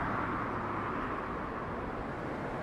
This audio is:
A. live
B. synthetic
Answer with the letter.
A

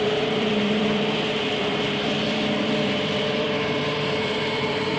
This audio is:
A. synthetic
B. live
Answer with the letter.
A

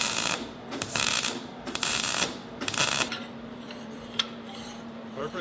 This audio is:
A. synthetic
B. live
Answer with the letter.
A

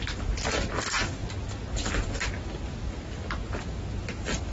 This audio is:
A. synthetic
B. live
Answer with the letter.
B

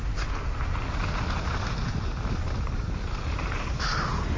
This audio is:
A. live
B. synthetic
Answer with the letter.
A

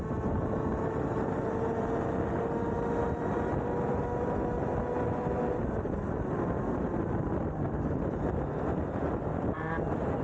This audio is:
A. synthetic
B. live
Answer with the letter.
B